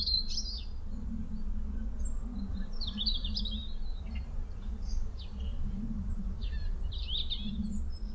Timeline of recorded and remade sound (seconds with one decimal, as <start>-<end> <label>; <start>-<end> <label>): 0.0-2.5 recorded; 2.5-3.4 remade; 3.4-3.9 recorded; 3.9-6.9 remade; 6.9-8.1 recorded